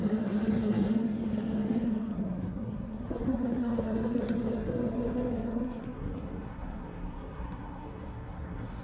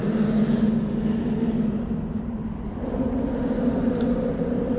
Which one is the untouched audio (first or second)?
second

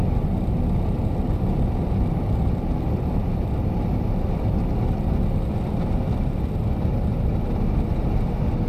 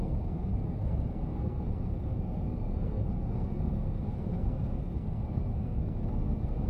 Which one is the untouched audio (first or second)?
first